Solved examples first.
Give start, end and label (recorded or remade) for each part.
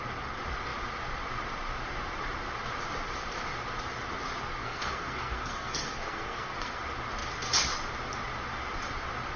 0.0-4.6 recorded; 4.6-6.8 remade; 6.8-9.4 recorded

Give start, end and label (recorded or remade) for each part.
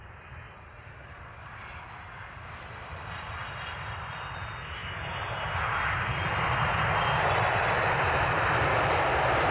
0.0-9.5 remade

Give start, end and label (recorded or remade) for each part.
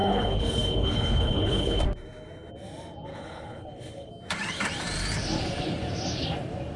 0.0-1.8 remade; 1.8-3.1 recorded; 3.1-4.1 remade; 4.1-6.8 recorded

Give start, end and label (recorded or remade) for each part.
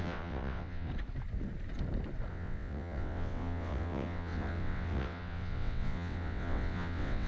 0.0-0.9 remade; 0.9-2.3 recorded; 2.3-7.3 remade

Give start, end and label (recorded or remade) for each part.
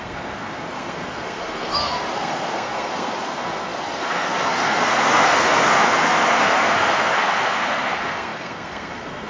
0.0-9.3 remade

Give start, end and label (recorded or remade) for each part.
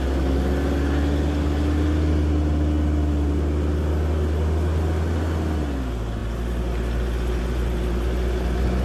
0.0-8.8 recorded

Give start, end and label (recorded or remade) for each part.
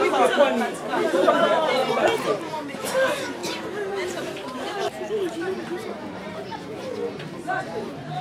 0.0-1.8 remade; 1.8-2.5 recorded; 2.5-7.0 remade; 7.0-7.6 recorded; 7.6-8.2 remade